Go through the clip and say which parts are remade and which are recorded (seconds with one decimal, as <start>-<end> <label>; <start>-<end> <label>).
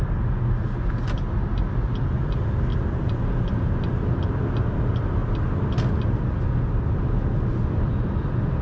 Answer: 0.0-8.6 recorded